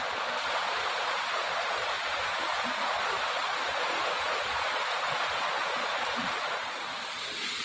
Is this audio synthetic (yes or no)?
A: yes